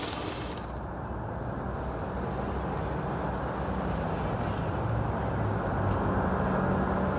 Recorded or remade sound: recorded